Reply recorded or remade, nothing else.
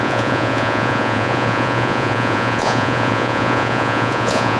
remade